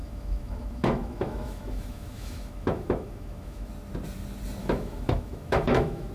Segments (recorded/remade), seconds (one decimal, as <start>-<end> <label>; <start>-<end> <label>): 0.0-3.7 remade; 3.7-4.6 recorded; 4.6-6.1 remade